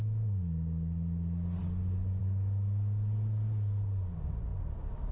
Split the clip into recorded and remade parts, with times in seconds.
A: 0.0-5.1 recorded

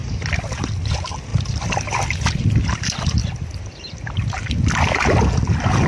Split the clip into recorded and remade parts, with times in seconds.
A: 0.0-0.7 remade; 0.7-1.3 recorded; 1.3-2.7 remade; 2.7-3.2 recorded; 3.2-4.9 remade; 4.9-5.9 recorded

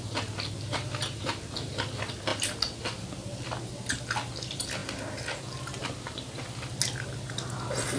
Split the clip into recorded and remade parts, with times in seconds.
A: 0.0-8.0 recorded

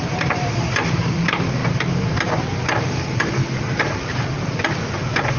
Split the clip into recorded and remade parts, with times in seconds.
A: 0.0-5.4 remade

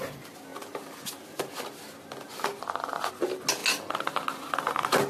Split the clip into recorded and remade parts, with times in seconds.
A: 0.0-5.1 recorded

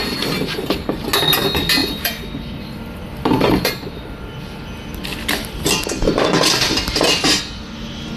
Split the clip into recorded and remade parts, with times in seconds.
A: 0.0-1.8 recorded; 1.8-4.1 remade; 4.1-5.1 recorded; 5.1-7.4 remade; 7.4-8.2 recorded

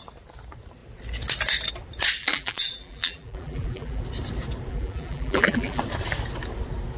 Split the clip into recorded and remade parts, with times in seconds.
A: 0.0-2.2 recorded; 2.2-4.0 remade; 4.0-4.7 recorded; 4.7-5.8 remade; 5.8-7.0 recorded

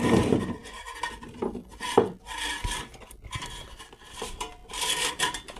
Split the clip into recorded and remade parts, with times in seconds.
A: 0.0-2.9 remade; 2.9-3.6 recorded; 3.6-4.6 remade; 4.6-5.1 recorded; 5.1-5.6 remade